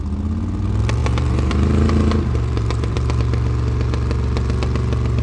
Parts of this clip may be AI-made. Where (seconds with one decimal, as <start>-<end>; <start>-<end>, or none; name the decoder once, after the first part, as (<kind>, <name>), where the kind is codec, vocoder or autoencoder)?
1.0-3.2 (vocoder, BigVGAN v2)